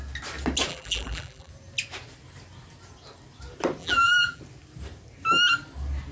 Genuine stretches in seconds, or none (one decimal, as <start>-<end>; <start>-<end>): 0.0-0.7; 1.5-3.8; 4.4-6.1